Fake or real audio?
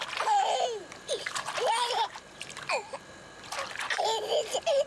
fake